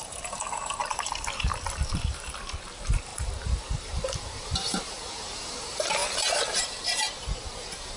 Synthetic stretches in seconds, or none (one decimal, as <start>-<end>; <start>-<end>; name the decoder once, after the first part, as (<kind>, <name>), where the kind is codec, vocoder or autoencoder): 0.0-8.0 (vocoder, BigVGAN v2)